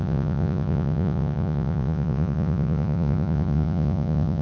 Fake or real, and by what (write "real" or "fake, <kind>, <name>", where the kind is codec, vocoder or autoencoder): fake, vocoder, Vocos